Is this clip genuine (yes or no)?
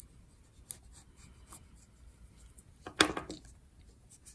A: yes